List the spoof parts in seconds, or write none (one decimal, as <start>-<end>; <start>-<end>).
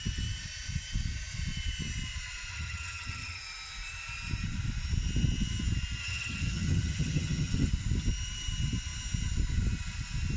2.5-3.4; 6.0-7.7